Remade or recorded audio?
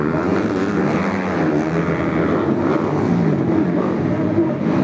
recorded